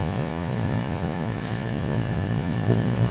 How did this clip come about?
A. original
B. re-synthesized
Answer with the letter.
B